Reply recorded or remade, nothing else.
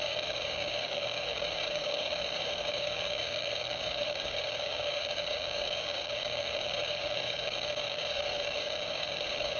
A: remade